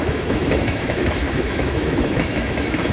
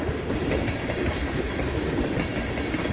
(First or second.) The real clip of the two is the second